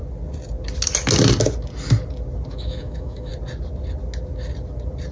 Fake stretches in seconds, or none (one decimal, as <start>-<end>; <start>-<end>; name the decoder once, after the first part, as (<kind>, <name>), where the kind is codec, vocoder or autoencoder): 2.5-3.3 (autoencoder, DAC-VAE)